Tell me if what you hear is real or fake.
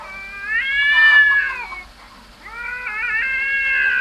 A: real